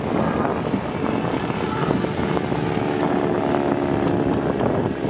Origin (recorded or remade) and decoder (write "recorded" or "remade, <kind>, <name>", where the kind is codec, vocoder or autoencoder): recorded